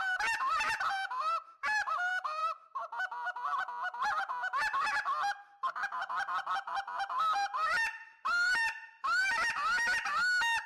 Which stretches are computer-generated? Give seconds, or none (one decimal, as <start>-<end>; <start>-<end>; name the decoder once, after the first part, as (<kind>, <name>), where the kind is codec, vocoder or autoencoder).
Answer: 0.0-2.4 (vocoder, BigVGAN v2); 7.2-9.2